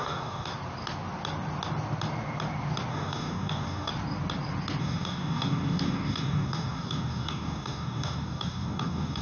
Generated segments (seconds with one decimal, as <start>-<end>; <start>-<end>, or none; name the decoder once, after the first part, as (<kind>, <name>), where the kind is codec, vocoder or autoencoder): 0.0-0.5 (codec, DAC); 2.9-3.9; 4.8-9.2